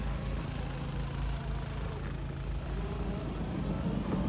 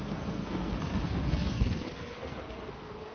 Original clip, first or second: first